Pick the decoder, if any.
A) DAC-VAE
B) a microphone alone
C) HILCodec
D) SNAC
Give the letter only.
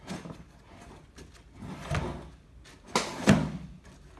B